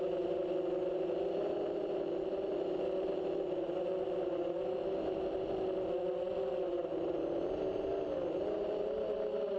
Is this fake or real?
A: real